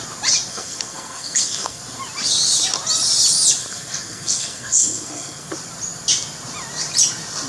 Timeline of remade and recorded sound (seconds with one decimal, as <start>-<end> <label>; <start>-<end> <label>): 0.0-0.5 recorded; 0.5-1.8 remade; 1.8-3.6 recorded; 3.6-5.5 remade; 5.5-7.5 recorded